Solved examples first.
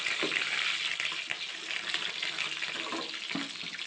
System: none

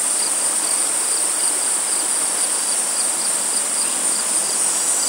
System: none